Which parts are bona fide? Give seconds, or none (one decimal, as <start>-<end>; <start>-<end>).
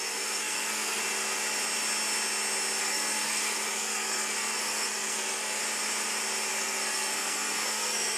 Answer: 1.0-2.8; 5.6-6.5